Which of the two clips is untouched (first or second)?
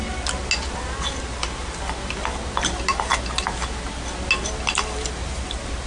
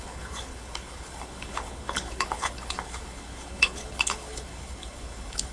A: first